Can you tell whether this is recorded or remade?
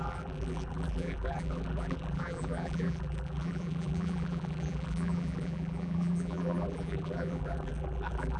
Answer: remade